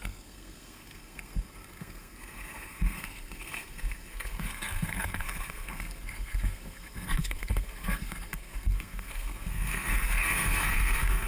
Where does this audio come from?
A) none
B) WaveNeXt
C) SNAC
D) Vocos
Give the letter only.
C